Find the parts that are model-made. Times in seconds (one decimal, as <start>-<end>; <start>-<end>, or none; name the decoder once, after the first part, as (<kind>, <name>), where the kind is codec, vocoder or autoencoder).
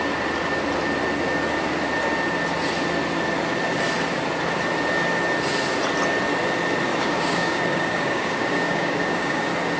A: 6.9-9.4 (codec, DAC)